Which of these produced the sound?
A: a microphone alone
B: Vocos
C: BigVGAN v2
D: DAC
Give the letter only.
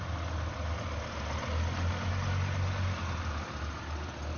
A